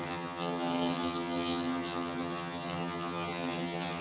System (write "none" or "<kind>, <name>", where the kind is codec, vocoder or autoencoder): vocoder, HiFi-GAN